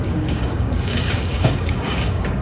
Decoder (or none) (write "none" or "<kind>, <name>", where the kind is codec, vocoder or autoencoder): codec, DAC